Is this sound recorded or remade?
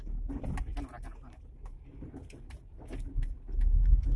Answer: recorded